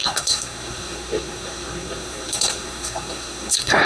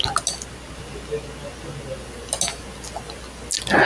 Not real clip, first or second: first